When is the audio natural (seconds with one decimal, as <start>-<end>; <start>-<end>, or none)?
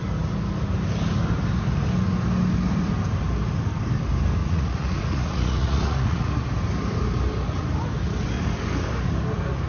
0.0-4.4; 6.3-9.7